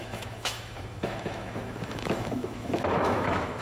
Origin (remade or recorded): remade